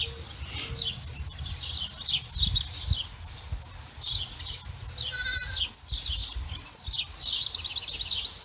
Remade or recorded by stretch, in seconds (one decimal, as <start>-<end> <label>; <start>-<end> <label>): 0.0-8.4 recorded